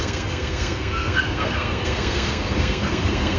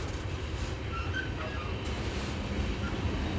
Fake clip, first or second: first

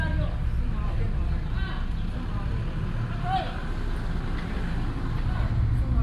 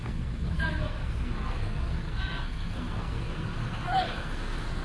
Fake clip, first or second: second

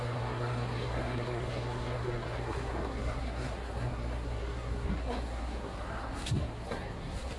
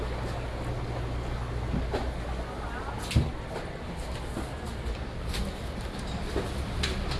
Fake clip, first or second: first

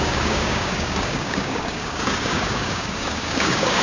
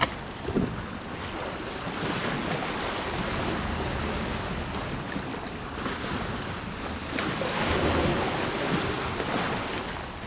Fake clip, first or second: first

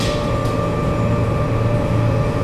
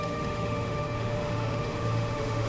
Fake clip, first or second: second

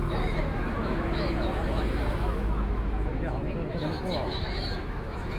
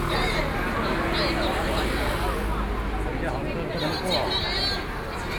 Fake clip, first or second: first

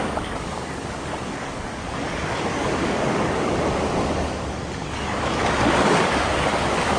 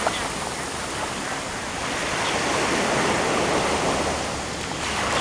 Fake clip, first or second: first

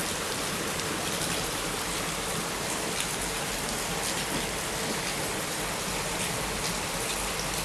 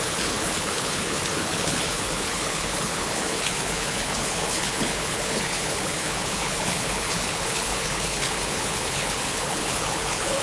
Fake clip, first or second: second